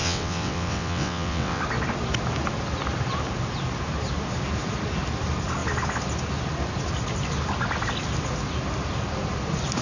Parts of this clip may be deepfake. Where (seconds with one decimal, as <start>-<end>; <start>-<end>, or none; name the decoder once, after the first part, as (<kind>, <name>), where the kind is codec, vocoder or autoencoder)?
0.0-1.6 (vocoder, WaveNeXt)